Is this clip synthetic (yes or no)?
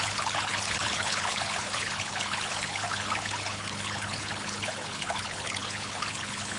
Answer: yes